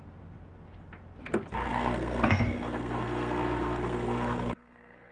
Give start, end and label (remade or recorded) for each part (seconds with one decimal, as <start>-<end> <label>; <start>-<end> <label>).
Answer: 0.0-1.7 recorded; 1.7-5.1 remade